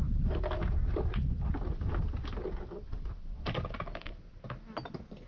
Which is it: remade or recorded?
recorded